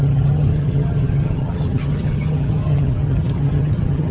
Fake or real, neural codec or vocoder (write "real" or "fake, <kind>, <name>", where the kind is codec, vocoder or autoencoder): fake, vocoder, HiFi-GAN